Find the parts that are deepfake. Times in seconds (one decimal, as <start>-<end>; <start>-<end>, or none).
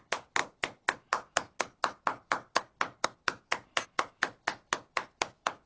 none